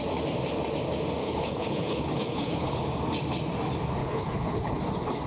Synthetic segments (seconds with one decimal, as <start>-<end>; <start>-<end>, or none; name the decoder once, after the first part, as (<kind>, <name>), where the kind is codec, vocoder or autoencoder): 1.2-2.8 (codec, HILCodec); 4.0-4.8